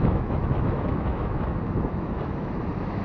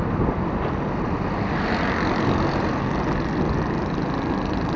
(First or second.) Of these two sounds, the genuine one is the second